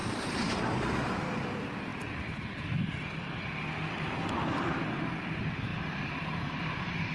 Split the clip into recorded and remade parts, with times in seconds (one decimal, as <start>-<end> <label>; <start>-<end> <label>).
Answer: 0.0-0.6 remade; 0.6-5.7 recorded; 5.7-7.1 remade